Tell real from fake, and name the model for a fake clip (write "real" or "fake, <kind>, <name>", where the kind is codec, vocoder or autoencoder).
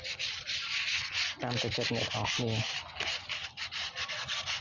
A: real